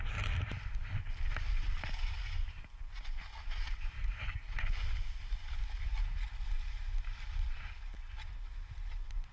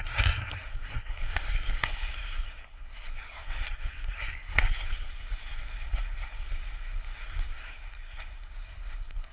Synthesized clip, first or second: second